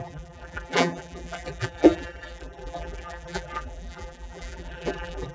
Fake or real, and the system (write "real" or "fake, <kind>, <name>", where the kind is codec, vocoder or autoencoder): fake, vocoder, BigVGAN v2